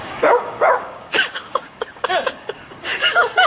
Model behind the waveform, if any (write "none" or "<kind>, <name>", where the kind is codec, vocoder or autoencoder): codec, DAC